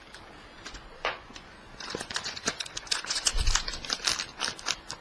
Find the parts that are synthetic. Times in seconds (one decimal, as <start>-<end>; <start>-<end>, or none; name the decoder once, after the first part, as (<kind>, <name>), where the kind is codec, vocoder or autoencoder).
0.5-3.5 (vocoder, Vocos)